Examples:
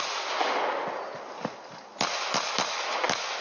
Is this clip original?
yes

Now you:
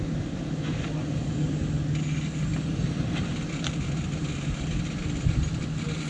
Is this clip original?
yes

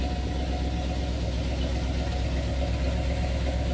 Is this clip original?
yes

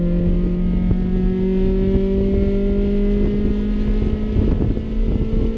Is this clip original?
yes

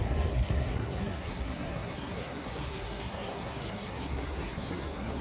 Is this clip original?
no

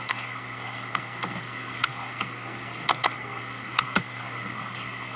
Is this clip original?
no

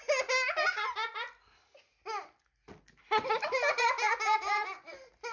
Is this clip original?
yes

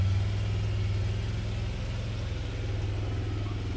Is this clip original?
yes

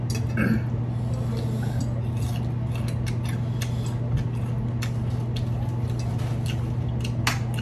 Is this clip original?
yes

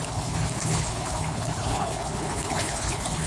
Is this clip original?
no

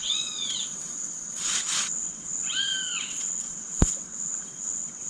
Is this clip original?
no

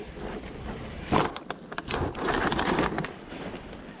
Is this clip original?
yes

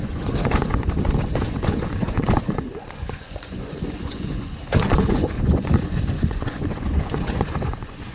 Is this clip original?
no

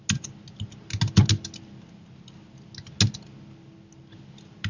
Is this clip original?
yes